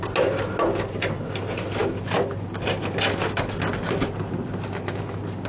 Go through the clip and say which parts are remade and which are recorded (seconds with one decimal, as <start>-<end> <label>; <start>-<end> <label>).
0.0-5.5 recorded